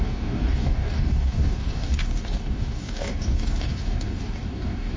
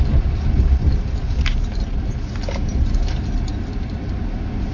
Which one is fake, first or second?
first